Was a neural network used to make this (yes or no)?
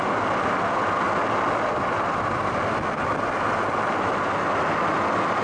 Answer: no